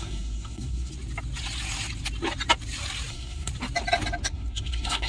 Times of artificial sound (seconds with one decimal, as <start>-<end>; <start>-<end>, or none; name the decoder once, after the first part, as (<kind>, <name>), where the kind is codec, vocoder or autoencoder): 0.0-0.9 (codec, SNAC); 3.1-3.5; 4.3-5.1